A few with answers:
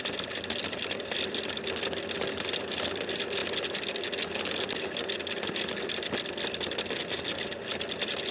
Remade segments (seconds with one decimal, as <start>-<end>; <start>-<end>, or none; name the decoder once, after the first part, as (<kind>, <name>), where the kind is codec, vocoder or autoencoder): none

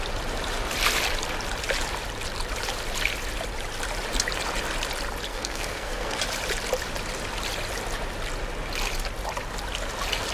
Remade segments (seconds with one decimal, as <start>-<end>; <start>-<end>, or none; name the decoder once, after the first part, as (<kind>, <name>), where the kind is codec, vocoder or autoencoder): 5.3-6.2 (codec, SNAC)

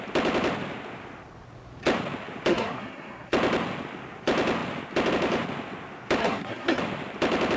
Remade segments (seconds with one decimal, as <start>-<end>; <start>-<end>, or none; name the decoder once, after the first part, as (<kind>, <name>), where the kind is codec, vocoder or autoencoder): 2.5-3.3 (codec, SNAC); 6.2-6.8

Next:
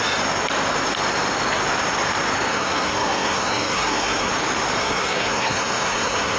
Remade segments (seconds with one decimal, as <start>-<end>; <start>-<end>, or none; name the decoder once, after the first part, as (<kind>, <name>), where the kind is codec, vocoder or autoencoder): 2.5-4.3 (codec, SNAC); 4.8-6.4